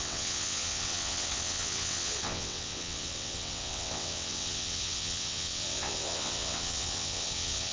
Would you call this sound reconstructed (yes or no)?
yes